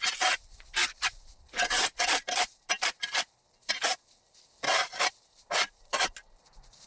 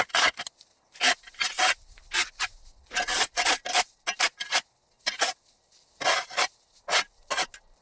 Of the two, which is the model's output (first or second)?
first